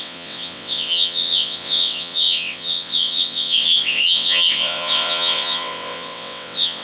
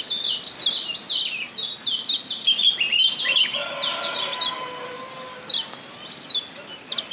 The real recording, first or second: second